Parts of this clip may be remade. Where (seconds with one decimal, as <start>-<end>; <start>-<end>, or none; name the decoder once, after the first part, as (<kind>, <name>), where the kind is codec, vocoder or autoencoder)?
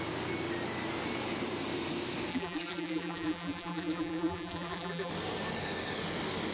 2.3-5.1 (vocoder, BigVGAN v2)